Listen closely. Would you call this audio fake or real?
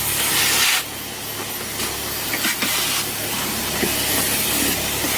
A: real